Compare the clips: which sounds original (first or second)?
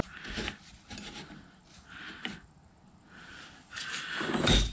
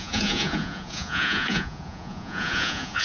first